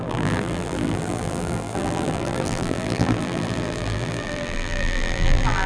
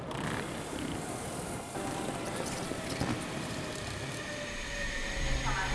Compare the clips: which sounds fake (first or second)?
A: first